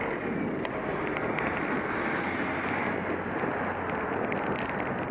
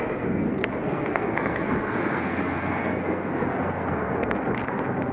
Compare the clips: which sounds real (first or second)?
first